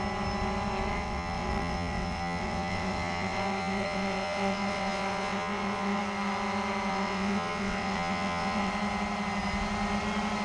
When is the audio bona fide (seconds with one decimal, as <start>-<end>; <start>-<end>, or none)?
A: 0.0-0.9; 6.0-6.9; 8.7-10.4